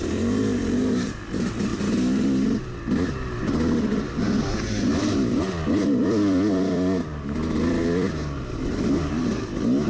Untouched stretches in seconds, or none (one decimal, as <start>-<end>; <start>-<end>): 1.7-4.4; 9.2-9.9